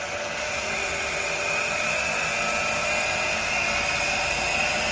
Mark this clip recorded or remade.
recorded